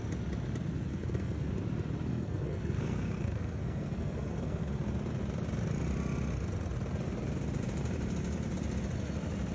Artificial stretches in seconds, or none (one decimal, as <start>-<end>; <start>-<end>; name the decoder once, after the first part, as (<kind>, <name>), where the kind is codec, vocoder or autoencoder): 0.9-1.5 (codec, SNAC); 2.1-4.8